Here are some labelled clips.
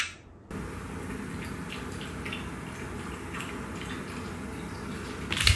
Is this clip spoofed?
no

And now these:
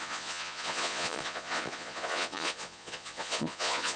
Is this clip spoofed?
yes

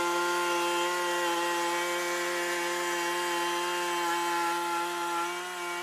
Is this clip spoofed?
no